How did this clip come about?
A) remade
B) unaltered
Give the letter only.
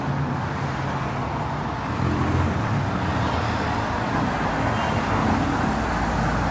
B